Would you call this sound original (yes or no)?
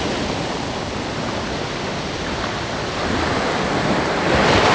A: yes